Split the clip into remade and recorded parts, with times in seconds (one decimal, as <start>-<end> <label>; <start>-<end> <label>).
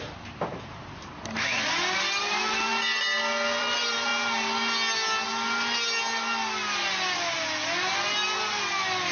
0.0-1.1 remade; 1.1-2.2 recorded; 2.2-2.7 remade; 2.7-3.6 recorded; 3.6-4.1 remade; 4.1-9.1 recorded